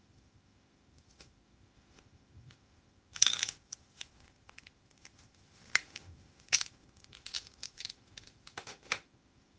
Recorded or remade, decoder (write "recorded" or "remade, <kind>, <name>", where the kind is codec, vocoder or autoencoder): remade, autoencoder, DAC-VAE